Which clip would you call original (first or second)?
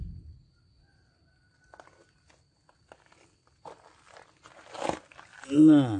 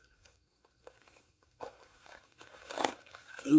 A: first